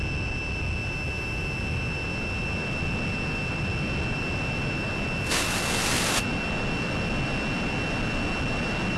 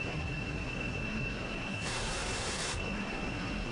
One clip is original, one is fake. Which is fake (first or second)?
second